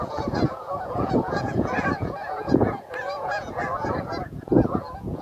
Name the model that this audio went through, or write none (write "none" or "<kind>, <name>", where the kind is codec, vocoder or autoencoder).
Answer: vocoder, Vocos